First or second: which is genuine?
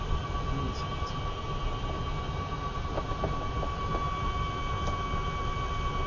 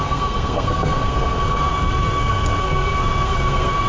first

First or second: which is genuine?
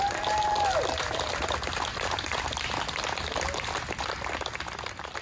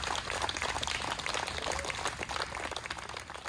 second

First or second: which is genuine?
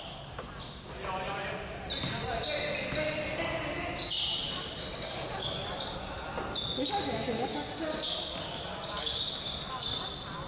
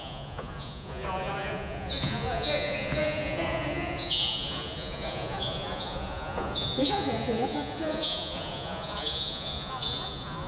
first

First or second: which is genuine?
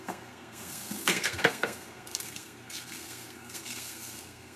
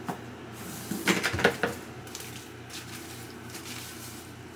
second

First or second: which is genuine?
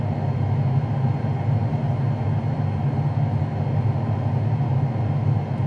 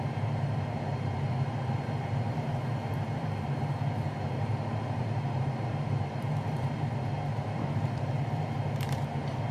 first